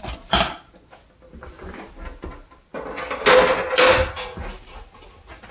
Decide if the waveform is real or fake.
real